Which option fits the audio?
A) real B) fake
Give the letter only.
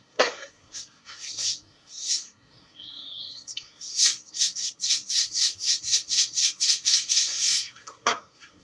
B